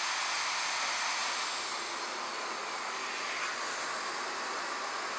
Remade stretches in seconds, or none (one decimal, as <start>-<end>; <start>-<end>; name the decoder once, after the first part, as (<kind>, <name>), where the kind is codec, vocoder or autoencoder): none